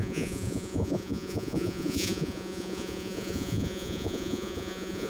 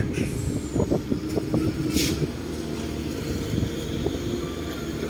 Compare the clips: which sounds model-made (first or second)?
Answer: first